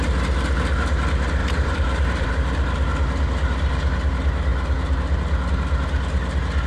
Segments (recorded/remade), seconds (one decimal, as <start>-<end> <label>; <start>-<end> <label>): 0.0-1.4 recorded; 1.4-2.3 remade; 2.3-6.7 recorded